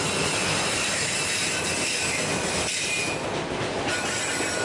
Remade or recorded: recorded